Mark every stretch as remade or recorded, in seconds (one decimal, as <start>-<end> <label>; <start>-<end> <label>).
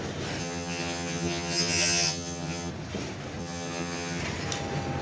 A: 0.0-0.4 recorded; 0.4-2.7 remade; 2.7-3.4 recorded; 3.4-4.2 remade; 4.2-5.0 recorded